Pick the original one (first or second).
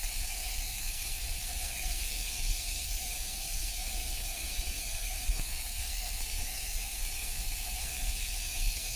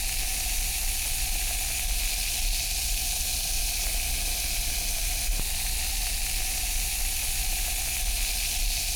second